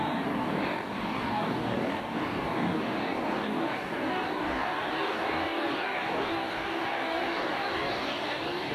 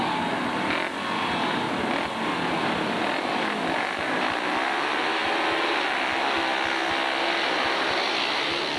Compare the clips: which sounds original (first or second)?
second